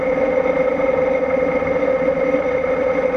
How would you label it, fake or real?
real